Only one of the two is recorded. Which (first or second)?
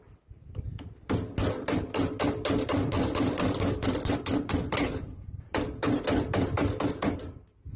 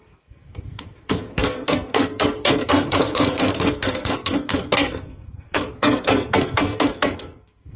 first